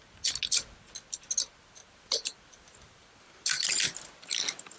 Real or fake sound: real